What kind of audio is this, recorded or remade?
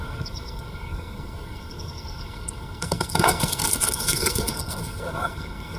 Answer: remade